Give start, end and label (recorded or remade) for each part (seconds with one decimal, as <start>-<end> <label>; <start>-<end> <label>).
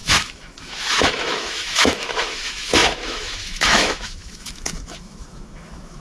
0.0-6.0 remade